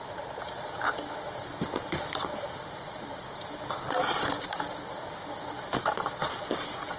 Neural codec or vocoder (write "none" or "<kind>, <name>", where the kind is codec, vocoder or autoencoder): none